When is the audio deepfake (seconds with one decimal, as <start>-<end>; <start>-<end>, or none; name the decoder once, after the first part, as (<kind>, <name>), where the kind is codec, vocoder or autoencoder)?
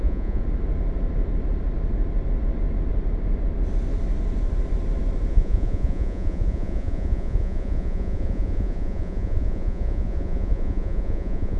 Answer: 0.0-0.4 (vocoder, Vocos); 5.3-11.6